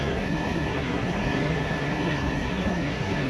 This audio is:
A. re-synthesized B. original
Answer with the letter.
A